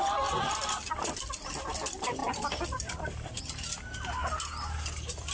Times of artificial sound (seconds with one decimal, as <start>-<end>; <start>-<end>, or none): none